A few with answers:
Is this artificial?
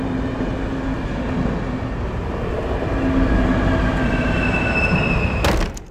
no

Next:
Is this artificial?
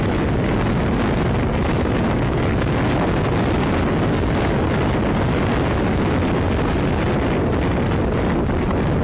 no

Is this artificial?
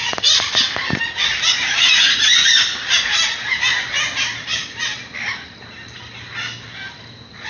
no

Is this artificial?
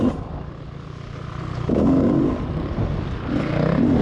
no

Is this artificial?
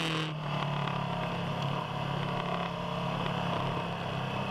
no